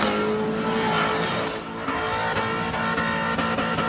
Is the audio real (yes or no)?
yes